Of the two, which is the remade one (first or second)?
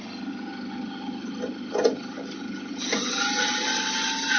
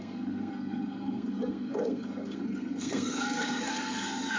second